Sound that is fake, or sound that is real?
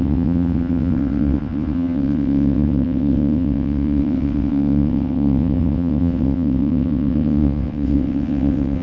fake